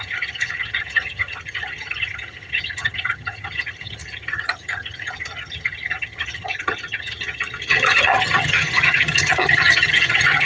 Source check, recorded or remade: remade